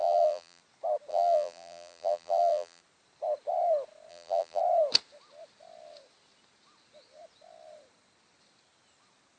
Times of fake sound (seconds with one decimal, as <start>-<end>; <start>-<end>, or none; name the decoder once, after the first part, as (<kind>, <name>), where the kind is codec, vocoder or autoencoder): 0.0-0.6 (vocoder, BigVGAN v2); 1.1-2.8; 4.1-4.6